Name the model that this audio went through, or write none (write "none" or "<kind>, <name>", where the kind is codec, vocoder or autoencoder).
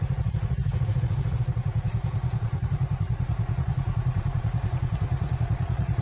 vocoder, Vocos